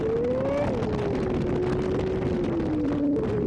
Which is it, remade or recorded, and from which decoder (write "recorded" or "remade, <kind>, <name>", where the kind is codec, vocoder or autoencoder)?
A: recorded